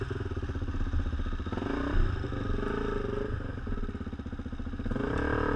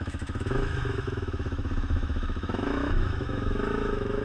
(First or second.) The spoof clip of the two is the second